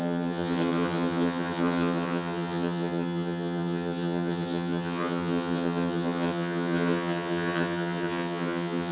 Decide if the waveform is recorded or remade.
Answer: remade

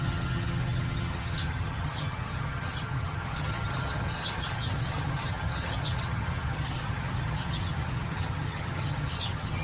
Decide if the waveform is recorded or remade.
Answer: remade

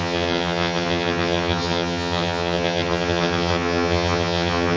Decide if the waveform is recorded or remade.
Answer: remade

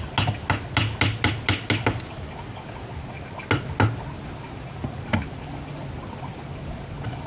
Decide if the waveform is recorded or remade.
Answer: recorded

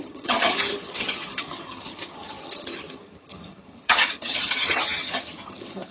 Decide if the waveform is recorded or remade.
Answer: remade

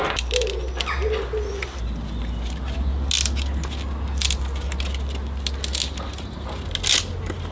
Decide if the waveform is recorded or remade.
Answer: recorded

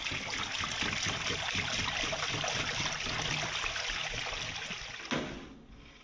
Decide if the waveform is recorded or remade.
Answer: recorded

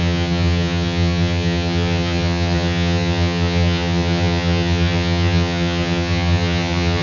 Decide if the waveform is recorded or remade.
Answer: remade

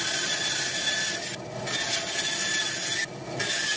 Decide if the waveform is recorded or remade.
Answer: recorded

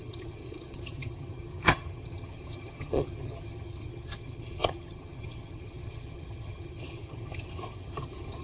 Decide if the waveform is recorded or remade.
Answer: remade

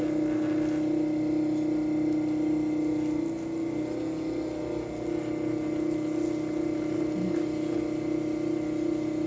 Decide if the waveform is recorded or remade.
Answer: recorded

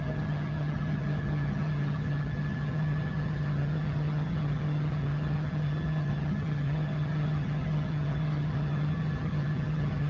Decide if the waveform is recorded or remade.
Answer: remade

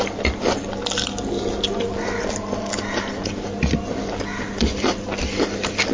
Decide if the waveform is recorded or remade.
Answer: recorded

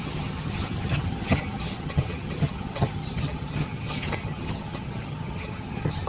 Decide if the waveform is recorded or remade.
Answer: remade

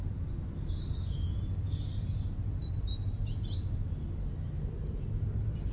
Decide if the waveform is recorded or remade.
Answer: recorded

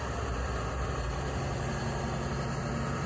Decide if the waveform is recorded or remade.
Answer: recorded